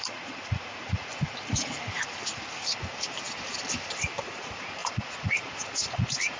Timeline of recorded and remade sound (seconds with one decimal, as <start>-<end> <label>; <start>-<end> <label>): 0.0-1.1 remade; 1.1-4.2 recorded; 4.2-6.4 remade